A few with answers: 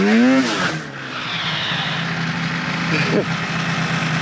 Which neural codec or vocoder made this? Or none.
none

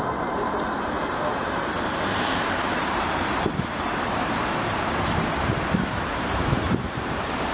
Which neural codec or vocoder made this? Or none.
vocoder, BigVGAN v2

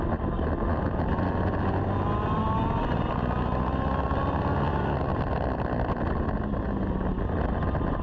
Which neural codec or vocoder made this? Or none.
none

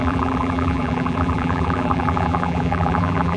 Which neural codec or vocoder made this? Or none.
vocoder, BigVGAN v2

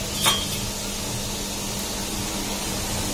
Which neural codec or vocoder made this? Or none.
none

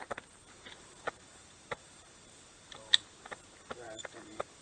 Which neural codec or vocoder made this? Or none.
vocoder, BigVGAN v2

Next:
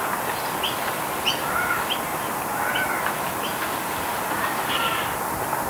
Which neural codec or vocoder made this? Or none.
none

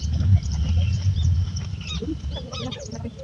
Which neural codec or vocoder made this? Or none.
vocoder, BigVGAN v2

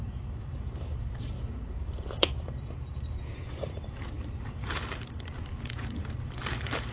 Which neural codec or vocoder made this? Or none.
vocoder, BigVGAN v2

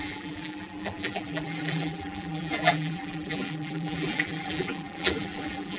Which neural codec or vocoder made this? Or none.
vocoder, BigVGAN v2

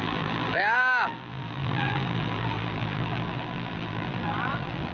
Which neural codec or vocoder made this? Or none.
vocoder, BigVGAN v2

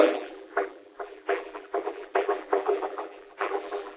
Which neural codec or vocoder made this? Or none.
vocoder, BigVGAN v2